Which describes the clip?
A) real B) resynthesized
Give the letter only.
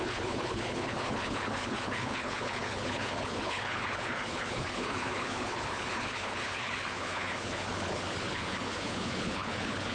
B